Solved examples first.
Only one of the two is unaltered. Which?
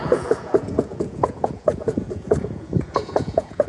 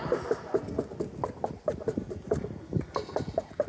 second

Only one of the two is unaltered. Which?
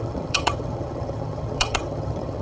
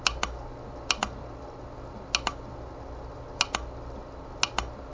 second